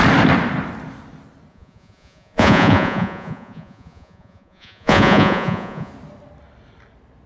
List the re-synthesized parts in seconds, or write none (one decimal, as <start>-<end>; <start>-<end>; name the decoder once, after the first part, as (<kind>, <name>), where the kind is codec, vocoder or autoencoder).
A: 1.5-5.9 (vocoder, Vocos)